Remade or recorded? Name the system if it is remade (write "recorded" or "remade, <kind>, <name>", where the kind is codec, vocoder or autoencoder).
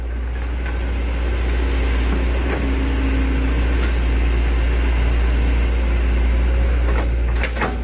recorded